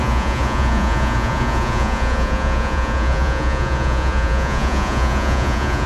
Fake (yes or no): yes